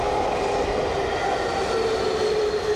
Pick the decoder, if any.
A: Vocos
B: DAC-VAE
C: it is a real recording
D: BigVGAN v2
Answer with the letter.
C